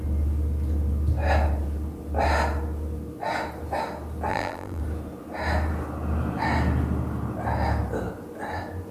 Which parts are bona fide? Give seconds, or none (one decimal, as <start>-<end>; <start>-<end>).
0.0-4.3; 4.8-8.9